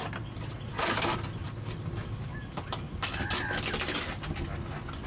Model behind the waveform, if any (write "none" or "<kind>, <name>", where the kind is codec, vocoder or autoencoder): none